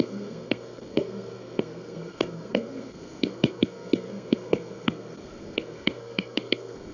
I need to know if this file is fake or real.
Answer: fake